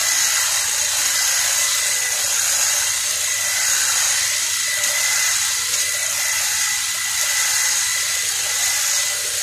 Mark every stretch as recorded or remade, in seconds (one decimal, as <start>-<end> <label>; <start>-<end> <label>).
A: 0.0-1.1 recorded; 1.1-9.4 remade

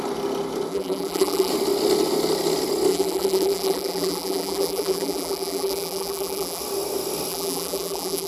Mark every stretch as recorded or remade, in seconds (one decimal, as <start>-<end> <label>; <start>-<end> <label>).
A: 0.0-0.7 recorded; 0.7-1.5 remade; 1.5-2.9 recorded; 2.9-6.6 remade; 6.6-7.3 recorded; 7.3-8.3 remade

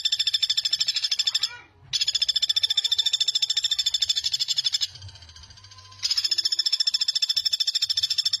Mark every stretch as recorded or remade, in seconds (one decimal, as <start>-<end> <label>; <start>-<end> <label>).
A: 0.0-0.4 recorded; 0.4-1.9 remade; 1.9-7.4 recorded; 7.4-8.0 remade; 8.0-8.4 recorded

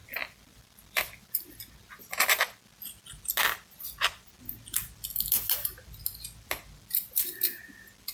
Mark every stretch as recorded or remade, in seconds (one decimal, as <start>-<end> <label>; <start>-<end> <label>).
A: 0.0-2.0 remade; 2.0-8.1 recorded

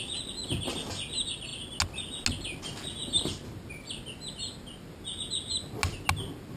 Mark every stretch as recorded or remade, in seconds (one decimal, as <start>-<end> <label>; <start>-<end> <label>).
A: 0.0-6.6 recorded